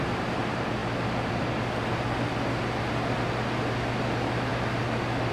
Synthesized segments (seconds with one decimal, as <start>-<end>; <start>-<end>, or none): none